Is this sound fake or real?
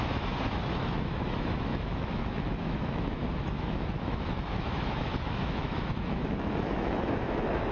fake